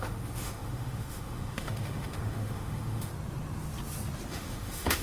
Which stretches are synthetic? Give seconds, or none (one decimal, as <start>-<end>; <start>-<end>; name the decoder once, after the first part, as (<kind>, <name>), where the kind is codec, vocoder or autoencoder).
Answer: 0.0-3.1 (autoencoder, DAC-VAE); 4.3-5.0